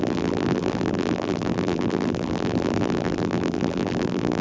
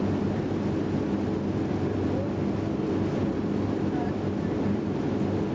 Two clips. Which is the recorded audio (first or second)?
second